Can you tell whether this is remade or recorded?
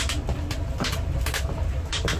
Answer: recorded